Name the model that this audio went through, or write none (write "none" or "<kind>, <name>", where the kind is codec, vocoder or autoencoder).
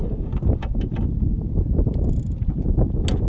none